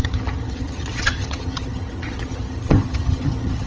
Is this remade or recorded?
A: remade